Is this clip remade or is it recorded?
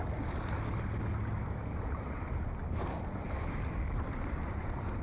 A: recorded